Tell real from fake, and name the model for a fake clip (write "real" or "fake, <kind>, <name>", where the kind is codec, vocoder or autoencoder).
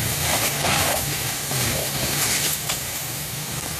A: fake, codec, DAC